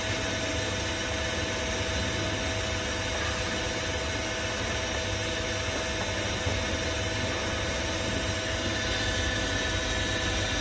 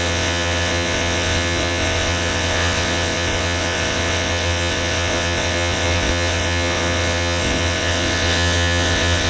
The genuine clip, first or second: first